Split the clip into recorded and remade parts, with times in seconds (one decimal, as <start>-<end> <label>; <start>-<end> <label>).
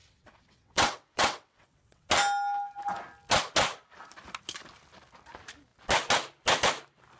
0.0-2.1 remade; 2.1-7.2 recorded